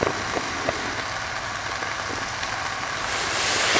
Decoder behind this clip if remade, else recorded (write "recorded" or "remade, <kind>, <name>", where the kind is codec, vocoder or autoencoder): recorded